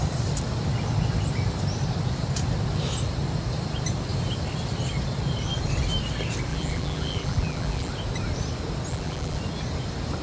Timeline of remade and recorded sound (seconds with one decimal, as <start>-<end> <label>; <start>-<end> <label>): 0.0-6.5 recorded; 6.5-7.9 remade; 7.9-8.9 recorded; 8.9-9.4 remade; 9.4-10.2 recorded

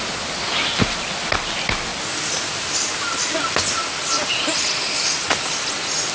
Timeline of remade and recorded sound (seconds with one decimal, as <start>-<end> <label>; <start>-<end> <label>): 0.0-6.1 recorded

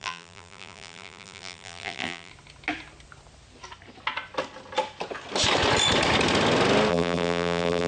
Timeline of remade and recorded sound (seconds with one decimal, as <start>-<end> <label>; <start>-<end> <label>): 0.0-2.3 remade; 2.3-6.9 recorded; 6.9-7.9 remade

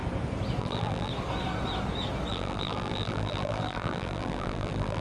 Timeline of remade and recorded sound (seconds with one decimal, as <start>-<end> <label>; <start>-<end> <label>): 0.0-0.6 recorded; 0.6-1.1 remade; 1.1-2.3 recorded; 2.3-5.0 remade

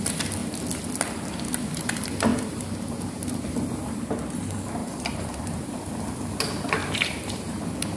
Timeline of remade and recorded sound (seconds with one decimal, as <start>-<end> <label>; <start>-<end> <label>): 0.0-2.3 recorded; 2.3-4.2 remade; 4.2-4.8 recorded; 4.8-5.9 remade; 5.9-6.8 recorded; 6.8-7.6 remade; 7.6-8.0 recorded

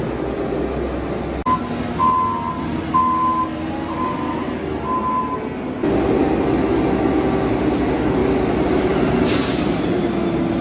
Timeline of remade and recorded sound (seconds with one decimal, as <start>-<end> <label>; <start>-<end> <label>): 0.0-8.2 recorded; 8.2-10.0 remade; 10.0-10.6 recorded

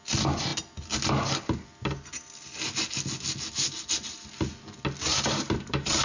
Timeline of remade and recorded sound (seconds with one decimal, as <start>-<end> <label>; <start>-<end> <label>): 0.0-5.1 recorded; 5.1-6.0 remade